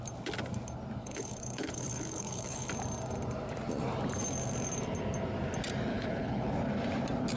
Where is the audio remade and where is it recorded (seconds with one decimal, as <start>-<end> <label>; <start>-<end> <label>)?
0.0-1.0 recorded; 1.0-2.7 remade; 2.7-5.9 recorded; 5.9-6.5 remade; 6.5-7.4 recorded